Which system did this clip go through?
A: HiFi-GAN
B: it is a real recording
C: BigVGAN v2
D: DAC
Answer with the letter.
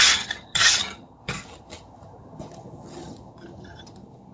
A